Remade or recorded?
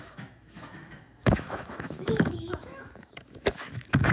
remade